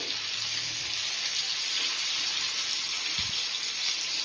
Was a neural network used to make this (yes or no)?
no